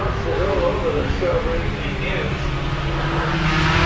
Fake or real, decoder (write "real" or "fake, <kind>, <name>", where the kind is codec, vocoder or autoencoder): real